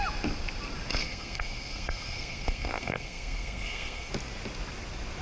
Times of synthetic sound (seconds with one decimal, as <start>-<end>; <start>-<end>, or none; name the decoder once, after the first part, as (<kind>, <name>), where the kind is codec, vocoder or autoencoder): 1.0-4.1 (codec, SNAC)